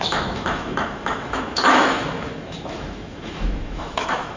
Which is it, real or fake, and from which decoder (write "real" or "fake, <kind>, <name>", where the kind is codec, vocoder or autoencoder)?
fake, autoencoder, DAC-VAE